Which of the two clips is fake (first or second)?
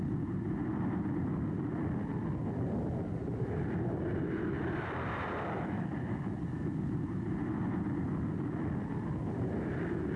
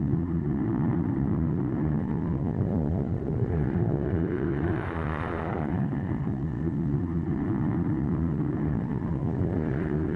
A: second